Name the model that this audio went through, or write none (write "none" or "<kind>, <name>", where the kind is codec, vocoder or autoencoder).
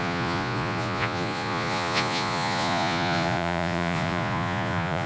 vocoder, Vocos